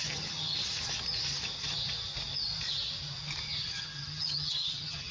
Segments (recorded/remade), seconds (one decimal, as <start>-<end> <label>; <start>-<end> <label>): 0.0-0.5 remade; 0.5-3.6 recorded; 3.6-5.1 remade